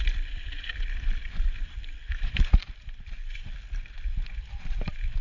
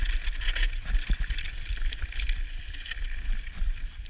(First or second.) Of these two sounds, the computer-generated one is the first